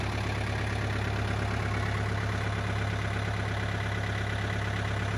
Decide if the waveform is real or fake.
real